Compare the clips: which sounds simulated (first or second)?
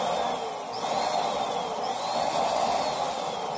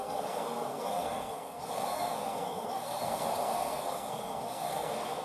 second